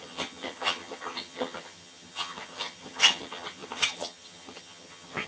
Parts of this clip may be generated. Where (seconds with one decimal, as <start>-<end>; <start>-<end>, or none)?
0.0-5.3